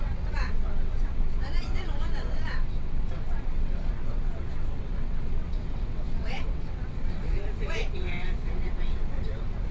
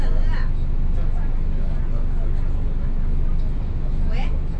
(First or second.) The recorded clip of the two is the second